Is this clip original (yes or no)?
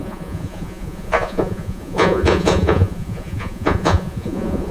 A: no